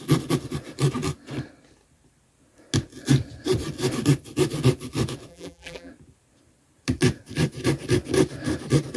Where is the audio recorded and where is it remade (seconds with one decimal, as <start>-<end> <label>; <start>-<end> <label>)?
0.0-5.3 recorded; 5.3-5.9 remade; 5.9-9.0 recorded